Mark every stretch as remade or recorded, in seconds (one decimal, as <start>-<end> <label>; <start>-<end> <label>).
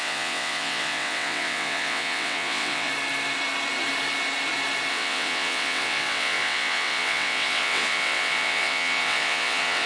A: 0.0-2.9 remade; 2.9-4.9 recorded; 4.9-9.9 remade